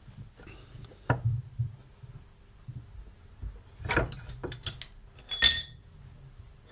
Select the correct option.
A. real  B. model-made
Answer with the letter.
A